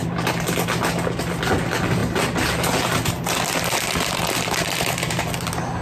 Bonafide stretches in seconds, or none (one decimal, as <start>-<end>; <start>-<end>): 0.0-5.8